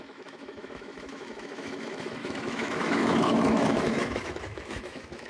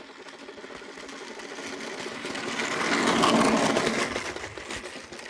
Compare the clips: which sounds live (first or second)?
second